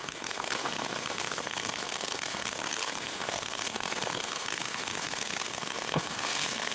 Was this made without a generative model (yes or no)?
no